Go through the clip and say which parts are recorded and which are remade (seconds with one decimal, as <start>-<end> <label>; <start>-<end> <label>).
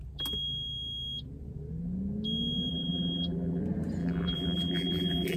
0.0-2.7 recorded; 2.7-3.6 remade; 3.6-4.0 recorded; 4.0-5.4 remade